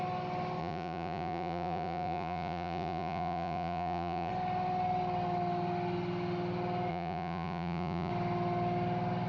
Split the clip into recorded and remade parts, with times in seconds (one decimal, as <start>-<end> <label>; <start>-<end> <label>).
0.0-0.6 recorded; 0.6-4.3 remade; 4.3-6.9 recorded; 6.9-8.1 remade; 8.1-9.3 recorded